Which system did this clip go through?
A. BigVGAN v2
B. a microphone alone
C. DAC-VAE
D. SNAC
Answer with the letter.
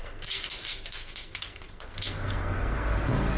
D